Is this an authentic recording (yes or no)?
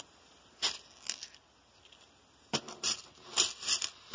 yes